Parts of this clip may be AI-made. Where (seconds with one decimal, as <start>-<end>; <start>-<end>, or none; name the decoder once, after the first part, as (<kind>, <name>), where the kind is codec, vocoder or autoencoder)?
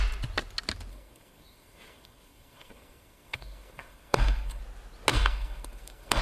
0.9-4.6 (codec, SNAC); 5.1-6.2